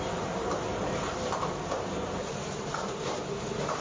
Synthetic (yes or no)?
yes